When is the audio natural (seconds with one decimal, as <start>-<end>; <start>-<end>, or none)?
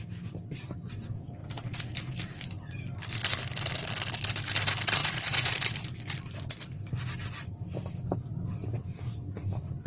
0.0-1.4; 2.2-5.0; 5.5-9.9